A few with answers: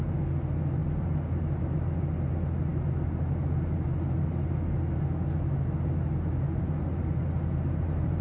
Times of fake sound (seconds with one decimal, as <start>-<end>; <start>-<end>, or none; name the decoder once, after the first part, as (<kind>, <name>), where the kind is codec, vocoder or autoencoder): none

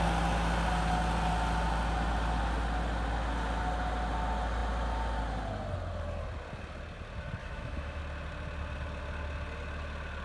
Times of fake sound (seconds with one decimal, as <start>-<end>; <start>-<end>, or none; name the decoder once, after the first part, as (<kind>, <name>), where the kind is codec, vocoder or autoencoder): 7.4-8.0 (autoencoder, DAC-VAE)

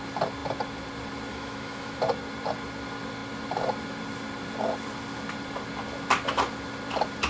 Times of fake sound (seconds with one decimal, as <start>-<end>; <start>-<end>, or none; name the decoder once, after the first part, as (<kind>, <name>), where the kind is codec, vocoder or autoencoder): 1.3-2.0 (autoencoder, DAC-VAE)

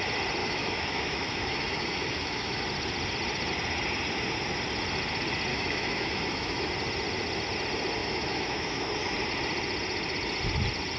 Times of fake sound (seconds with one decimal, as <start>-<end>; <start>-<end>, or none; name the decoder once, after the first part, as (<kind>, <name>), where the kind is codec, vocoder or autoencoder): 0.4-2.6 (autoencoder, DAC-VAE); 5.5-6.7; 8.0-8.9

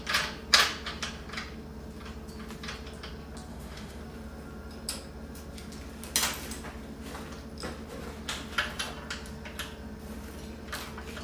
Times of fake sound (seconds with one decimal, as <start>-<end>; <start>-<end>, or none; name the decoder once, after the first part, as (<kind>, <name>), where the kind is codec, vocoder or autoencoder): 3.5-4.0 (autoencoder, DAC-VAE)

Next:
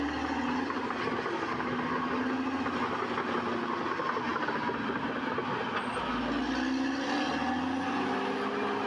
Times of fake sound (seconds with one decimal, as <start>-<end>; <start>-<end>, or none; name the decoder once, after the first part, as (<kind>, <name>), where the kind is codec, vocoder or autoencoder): none

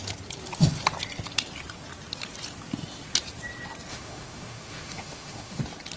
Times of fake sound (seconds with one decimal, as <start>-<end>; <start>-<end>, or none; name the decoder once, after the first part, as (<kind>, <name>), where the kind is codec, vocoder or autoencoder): 3.9-5.6 (autoencoder, DAC-VAE)

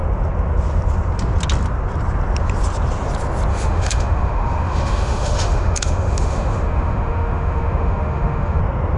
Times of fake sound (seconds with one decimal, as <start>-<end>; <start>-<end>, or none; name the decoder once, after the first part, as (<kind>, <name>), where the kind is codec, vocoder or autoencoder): 3.5-8.6 (autoencoder, DAC-VAE)